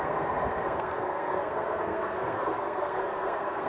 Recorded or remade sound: remade